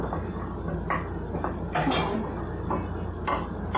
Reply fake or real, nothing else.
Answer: real